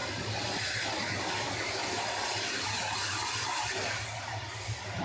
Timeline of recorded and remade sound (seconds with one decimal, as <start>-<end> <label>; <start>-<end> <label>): 0.0-5.0 recorded